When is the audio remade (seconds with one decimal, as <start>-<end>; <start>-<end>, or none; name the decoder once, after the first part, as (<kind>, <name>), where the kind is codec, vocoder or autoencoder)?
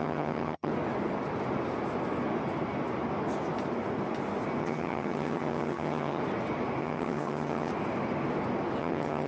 0.0-0.7 (vocoder, HiFi-GAN); 4.6-6.2; 6.8-7.7; 8.8-9.3